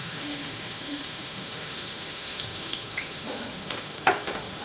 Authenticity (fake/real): fake